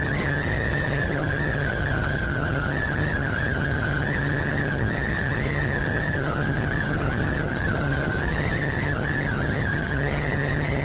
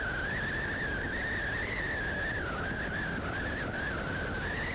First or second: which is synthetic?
first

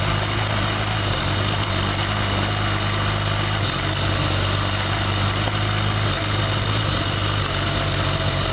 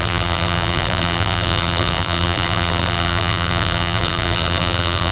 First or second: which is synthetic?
second